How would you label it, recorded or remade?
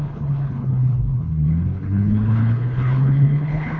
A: remade